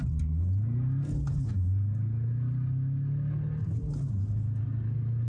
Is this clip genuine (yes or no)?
yes